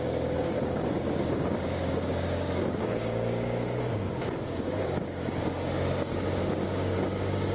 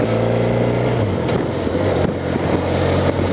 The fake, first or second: first